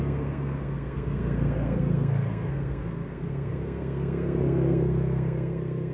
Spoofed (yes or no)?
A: yes